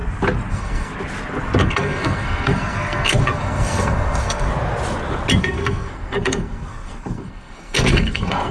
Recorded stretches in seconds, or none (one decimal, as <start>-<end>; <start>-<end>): 0.0-0.5; 0.9-1.6; 4.5-5.4